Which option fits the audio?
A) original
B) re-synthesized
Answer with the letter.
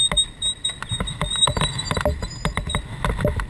A